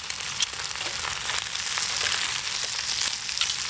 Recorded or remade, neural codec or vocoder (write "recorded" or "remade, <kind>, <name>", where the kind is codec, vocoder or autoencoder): recorded